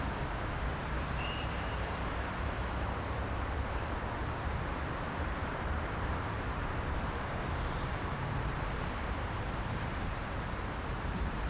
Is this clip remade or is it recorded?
remade